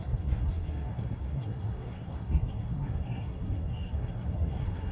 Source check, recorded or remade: remade